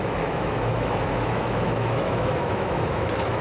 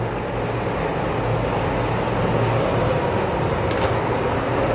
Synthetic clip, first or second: first